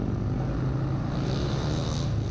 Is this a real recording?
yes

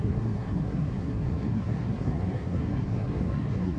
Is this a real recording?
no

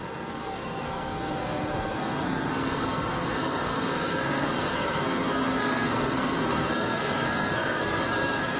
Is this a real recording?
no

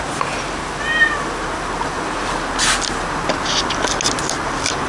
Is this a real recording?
yes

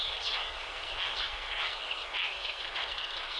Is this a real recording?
no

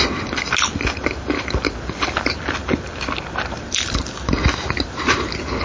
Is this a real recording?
yes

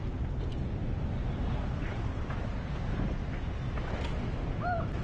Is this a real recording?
yes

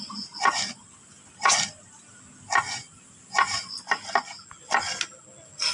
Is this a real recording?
yes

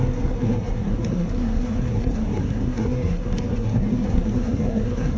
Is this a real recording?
no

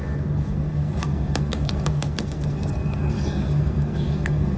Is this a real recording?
no